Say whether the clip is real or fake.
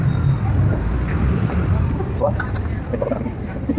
real